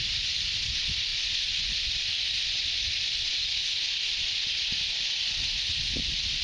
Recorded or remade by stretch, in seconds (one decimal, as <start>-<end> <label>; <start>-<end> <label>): 0.0-6.4 recorded

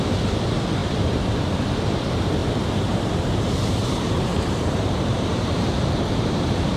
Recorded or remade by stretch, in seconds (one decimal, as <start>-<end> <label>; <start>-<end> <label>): 0.0-0.8 recorded; 0.8-1.4 remade; 1.4-2.4 recorded; 2.4-6.8 remade

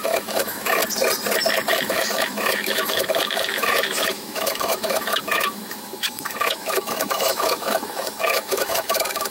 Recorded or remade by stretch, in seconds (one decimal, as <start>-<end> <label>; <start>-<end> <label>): 0.0-0.8 remade; 0.8-1.7 recorded; 1.7-9.3 remade

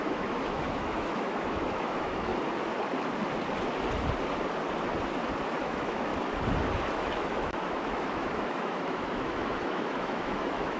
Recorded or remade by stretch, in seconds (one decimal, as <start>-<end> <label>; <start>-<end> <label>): 0.0-2.3 remade; 2.3-5.6 recorded; 5.6-6.1 remade; 6.1-6.9 recorded; 6.9-10.8 remade

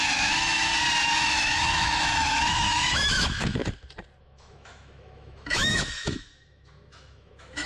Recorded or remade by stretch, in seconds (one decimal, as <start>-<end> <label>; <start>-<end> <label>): 0.0-0.7 remade; 0.7-1.2 recorded; 1.2-3.6 remade; 3.6-4.2 recorded; 4.2-7.7 remade

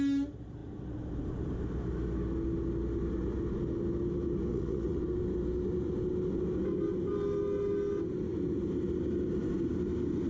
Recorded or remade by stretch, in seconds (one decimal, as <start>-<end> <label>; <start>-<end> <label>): 0.0-4.5 recorded; 4.5-5.0 remade; 5.0-10.3 recorded